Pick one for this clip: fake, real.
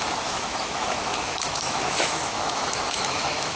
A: fake